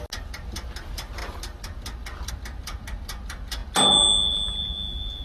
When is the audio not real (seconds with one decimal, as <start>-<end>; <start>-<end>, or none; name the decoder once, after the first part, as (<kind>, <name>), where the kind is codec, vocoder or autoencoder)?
none

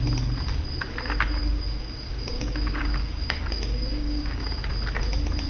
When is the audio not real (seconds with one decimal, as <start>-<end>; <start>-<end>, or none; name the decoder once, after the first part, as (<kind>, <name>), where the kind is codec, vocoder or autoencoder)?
1.4-4.7 (codec, DAC)

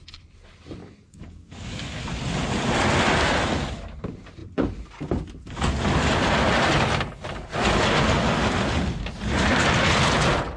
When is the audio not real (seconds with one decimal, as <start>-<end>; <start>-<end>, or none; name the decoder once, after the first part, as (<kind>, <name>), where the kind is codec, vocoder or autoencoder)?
0.8-2.0 (codec, DAC)